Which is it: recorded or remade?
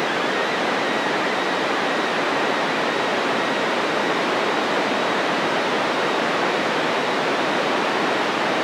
remade